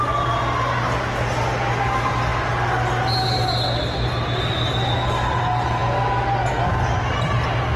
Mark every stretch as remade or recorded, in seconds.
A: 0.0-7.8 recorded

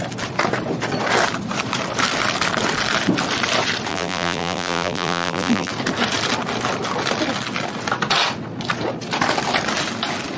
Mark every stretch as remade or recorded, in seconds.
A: 0.0-3.9 recorded; 3.9-5.7 remade; 5.7-10.4 recorded

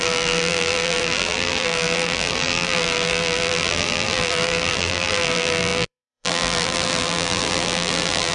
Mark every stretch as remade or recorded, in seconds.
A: 0.0-8.3 remade

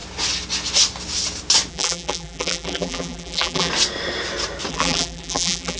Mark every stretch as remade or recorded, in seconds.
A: 0.0-1.7 recorded; 1.7-3.7 remade; 3.7-4.7 recorded; 4.7-5.8 remade